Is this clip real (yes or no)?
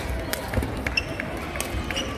yes